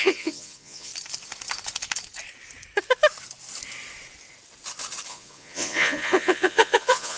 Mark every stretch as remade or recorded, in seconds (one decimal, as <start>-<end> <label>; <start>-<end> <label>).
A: 0.0-0.9 remade; 0.9-5.1 recorded; 5.1-7.2 remade